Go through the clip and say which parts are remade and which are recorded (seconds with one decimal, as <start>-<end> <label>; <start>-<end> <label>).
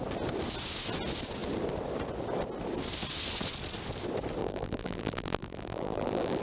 0.0-4.4 recorded; 4.4-6.4 remade